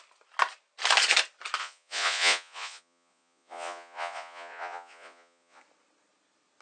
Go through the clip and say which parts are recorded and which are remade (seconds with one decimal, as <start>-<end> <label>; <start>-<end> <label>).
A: 0.0-1.6 recorded; 1.6-5.6 remade; 5.6-6.6 recorded